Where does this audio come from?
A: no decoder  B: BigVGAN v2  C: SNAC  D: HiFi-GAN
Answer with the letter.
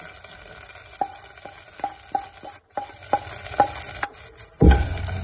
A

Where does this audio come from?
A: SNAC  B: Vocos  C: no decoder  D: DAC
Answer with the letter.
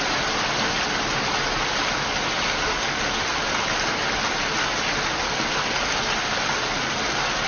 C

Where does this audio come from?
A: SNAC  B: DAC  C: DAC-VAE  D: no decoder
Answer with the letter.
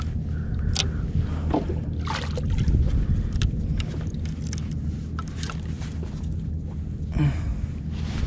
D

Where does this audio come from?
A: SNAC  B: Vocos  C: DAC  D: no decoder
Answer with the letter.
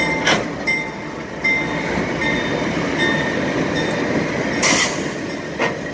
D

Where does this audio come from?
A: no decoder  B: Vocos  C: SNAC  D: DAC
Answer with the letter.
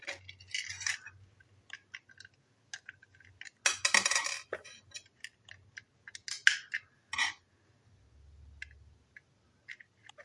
A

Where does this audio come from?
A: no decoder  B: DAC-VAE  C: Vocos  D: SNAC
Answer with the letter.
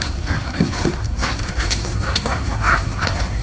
D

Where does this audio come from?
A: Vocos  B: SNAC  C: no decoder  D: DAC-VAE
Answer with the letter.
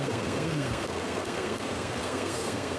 B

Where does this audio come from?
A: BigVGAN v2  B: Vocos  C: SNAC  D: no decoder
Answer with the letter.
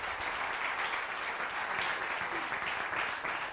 D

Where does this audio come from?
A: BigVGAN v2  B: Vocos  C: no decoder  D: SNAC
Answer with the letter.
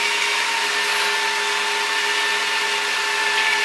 C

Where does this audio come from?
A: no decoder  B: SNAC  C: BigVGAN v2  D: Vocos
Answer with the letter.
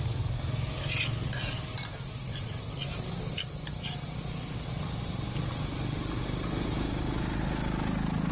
A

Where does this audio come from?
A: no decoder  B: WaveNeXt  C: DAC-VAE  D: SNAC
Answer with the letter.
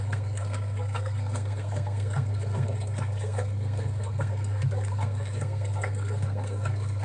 D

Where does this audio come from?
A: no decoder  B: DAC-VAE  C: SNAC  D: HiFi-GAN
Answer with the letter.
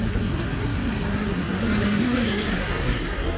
C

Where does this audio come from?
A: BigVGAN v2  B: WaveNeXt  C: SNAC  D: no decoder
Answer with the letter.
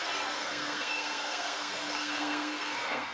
C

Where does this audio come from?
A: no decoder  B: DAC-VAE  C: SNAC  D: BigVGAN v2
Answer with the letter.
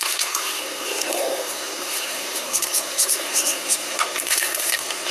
C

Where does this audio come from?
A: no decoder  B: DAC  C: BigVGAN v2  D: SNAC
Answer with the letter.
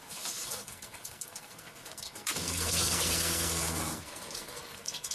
D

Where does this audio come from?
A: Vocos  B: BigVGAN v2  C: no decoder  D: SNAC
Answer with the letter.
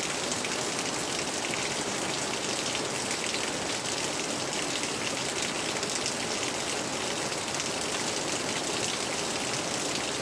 C